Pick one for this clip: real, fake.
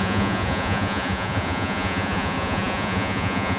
fake